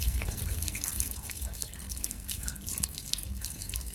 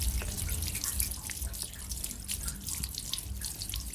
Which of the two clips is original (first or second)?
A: second